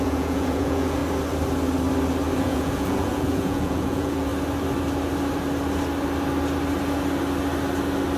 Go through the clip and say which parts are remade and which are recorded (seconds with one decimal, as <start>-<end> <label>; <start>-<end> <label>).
0.0-1.0 remade; 1.0-2.4 recorded; 2.4-4.3 remade; 4.3-8.2 recorded